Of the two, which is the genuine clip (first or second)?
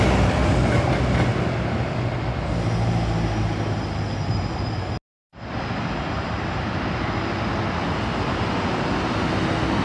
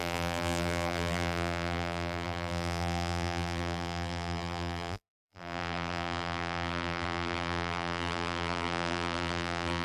first